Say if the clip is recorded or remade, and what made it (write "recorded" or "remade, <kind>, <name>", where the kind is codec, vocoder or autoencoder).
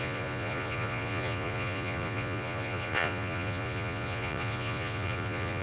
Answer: remade, vocoder, Vocos